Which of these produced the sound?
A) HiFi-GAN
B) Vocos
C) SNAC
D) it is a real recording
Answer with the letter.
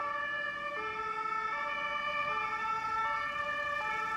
D